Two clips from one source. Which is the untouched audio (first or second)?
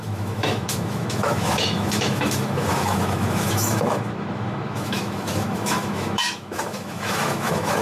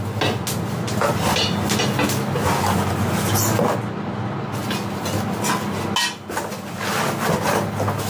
second